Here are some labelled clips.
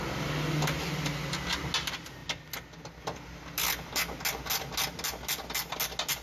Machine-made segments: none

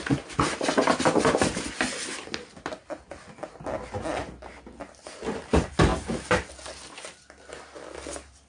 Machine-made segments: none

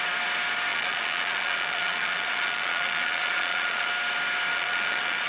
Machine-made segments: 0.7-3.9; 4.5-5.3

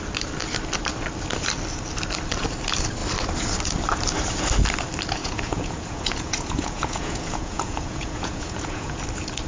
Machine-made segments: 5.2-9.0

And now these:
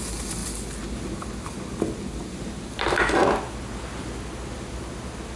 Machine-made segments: none

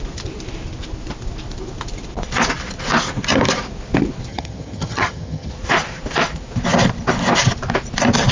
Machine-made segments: 4.3-5.5

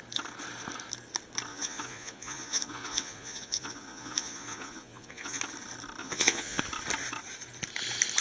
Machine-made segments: 1.5-5.4; 6.0-6.6